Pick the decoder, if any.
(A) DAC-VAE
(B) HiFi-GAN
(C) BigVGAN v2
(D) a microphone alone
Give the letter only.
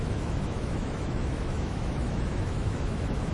A